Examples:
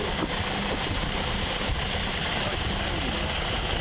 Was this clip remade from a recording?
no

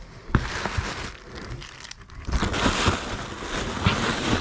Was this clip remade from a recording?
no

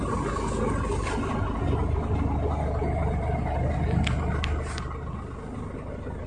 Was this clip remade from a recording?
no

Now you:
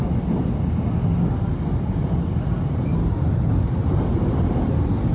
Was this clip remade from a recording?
no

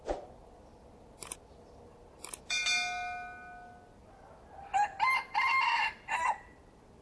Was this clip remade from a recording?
no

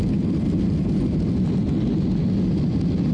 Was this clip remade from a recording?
no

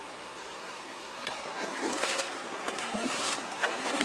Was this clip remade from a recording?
yes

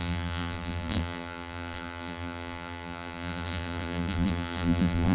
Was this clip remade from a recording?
yes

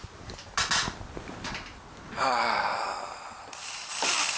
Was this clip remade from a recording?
no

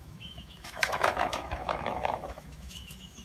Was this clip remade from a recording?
yes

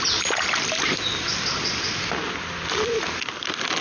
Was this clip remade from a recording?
no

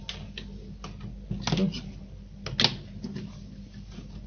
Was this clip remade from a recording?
no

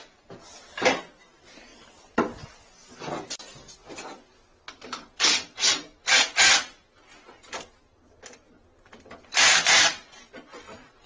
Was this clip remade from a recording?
no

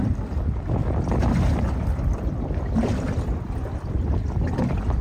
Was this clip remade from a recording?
no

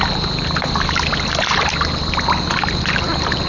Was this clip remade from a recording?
no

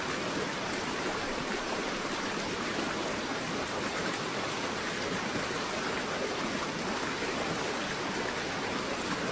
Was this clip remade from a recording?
no